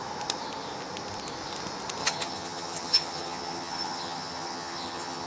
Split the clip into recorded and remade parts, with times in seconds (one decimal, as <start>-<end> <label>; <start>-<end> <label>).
0.0-2.0 recorded; 2.0-5.3 remade